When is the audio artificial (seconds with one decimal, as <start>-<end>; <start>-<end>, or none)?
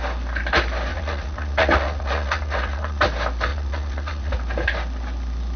0.9-3.0; 3.5-4.3